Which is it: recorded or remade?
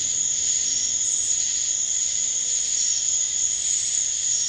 recorded